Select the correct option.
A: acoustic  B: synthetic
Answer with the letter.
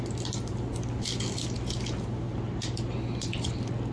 A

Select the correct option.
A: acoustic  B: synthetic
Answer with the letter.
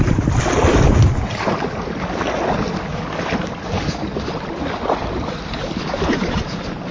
A